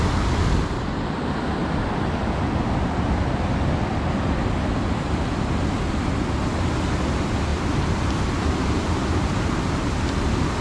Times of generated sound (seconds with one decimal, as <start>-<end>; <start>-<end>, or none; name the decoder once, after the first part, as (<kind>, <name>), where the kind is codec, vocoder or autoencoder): none